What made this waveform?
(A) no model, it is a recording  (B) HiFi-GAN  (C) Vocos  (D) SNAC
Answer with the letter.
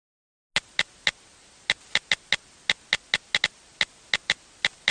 A